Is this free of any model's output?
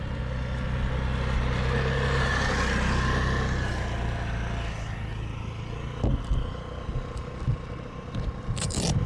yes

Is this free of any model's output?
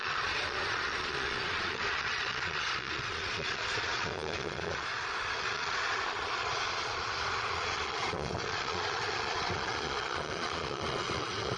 no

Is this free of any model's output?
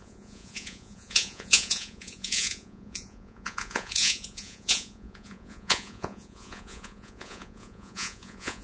no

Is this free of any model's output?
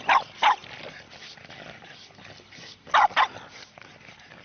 yes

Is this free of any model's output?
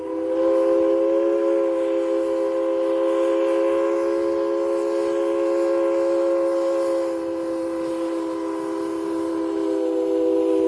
yes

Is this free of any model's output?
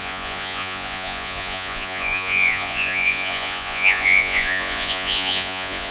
no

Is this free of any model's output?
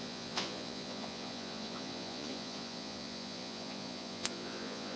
no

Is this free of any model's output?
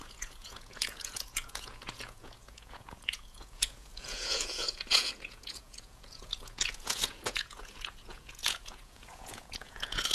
no